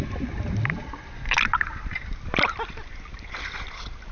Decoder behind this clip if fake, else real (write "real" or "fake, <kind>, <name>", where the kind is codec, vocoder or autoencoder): real